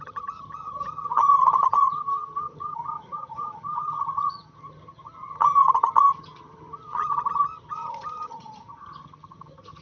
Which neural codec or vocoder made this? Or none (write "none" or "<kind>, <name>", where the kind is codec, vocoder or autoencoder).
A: vocoder, HiFi-GAN